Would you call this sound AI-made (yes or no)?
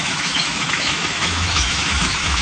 yes